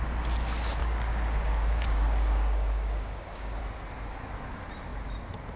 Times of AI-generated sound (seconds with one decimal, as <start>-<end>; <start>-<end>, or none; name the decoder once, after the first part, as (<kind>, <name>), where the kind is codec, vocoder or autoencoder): 0.8-3.6 (codec, DAC)